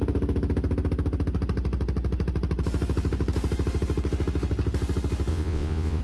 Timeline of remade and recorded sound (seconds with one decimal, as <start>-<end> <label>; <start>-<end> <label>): 0.0-5.3 recorded; 5.3-6.0 remade